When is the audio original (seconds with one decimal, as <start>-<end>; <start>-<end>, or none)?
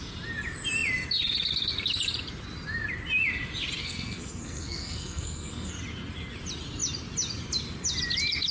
0.0-3.8; 5.7-8.5